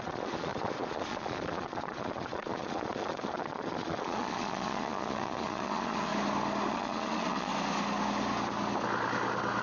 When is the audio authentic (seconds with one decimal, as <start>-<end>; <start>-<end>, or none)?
6.1-6.7; 7.5-9.6

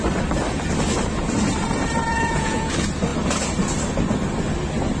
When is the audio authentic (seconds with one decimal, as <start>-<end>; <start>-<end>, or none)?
0.0-2.1; 2.7-5.0

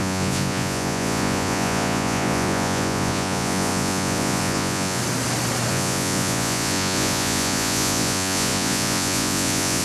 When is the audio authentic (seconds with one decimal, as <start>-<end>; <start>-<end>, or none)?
5.0-5.7

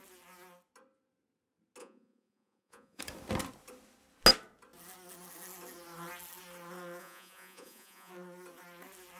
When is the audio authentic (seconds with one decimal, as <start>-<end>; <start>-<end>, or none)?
0.0-1.8; 3.0-7.0; 8.1-9.2

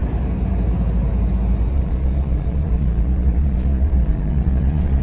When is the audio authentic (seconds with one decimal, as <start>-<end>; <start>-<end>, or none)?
0.0-1.7

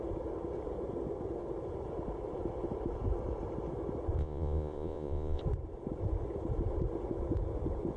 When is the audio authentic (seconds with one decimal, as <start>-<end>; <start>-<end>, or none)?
0.0-4.2; 5.4-8.0

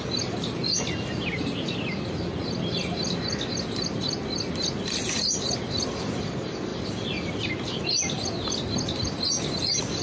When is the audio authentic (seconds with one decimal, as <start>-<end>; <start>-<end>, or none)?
0.0-10.0

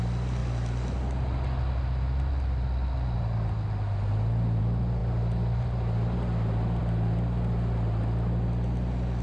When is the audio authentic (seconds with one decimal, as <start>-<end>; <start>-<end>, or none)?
0.0-9.2